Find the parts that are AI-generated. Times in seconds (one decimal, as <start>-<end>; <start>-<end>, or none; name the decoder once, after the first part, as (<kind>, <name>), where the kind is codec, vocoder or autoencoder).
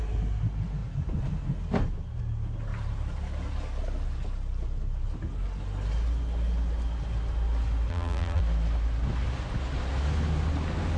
7.9-8.4 (vocoder, BigVGAN v2)